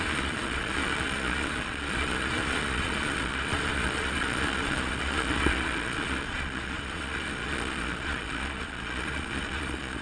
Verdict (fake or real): fake